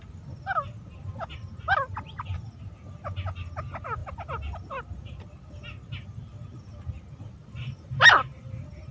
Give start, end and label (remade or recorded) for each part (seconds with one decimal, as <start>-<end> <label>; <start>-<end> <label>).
0.0-7.4 recorded; 7.4-8.5 remade; 8.5-8.9 recorded